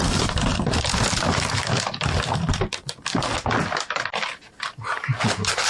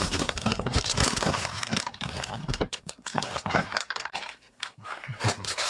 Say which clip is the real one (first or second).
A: first